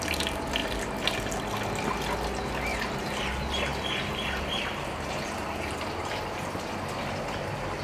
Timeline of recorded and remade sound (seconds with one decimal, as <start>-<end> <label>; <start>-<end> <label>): 0.0-0.6 recorded; 0.6-1.4 remade; 1.4-2.7 recorded; 2.7-6.2 remade; 6.2-7.8 recorded